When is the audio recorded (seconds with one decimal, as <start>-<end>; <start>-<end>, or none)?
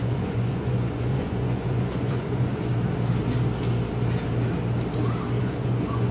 2.7-5.4